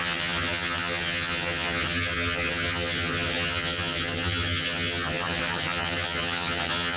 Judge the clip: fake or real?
fake